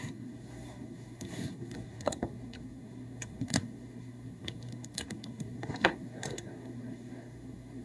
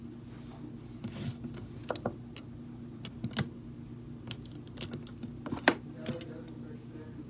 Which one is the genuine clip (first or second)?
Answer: second